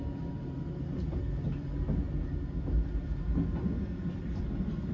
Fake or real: real